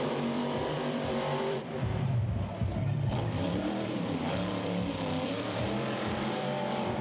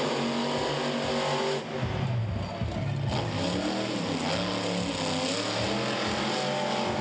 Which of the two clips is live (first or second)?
second